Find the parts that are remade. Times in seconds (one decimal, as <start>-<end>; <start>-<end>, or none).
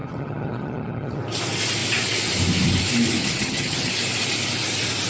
0.0-1.2; 3.2-3.9